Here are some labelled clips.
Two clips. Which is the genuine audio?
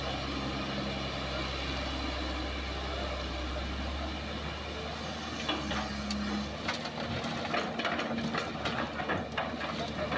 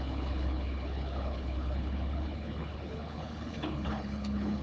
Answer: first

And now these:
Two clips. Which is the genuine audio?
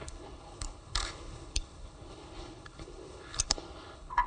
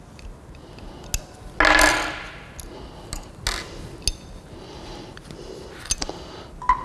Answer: second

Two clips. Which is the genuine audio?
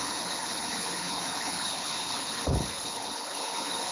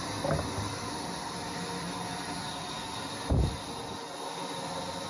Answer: second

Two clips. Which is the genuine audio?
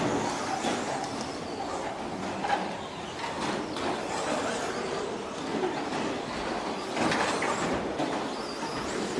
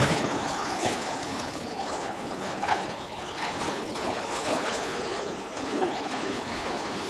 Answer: first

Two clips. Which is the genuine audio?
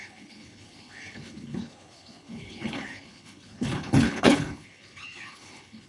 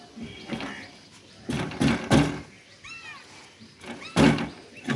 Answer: second